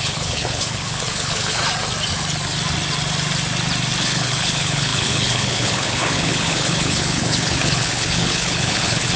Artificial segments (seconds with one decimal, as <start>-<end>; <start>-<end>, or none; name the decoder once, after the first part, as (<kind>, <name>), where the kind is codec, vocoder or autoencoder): 0.0-1.6 (codec, HILCodec); 4.0-9.2

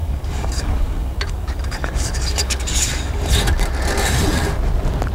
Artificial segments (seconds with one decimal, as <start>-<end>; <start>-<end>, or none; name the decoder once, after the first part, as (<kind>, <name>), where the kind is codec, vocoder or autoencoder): 0.0-3.1 (codec, DAC)

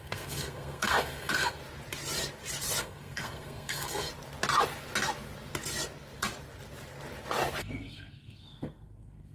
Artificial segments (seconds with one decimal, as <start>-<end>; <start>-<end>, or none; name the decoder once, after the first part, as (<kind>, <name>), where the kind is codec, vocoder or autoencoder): 0.0-1.6 (codec, SNAC); 2.8-4.1; 7.6-9.3